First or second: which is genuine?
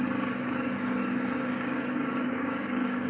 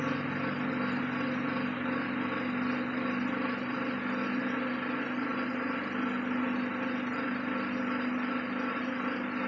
second